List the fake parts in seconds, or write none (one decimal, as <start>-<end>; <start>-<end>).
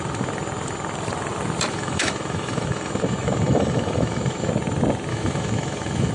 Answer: 1.7-4.5; 5.1-6.1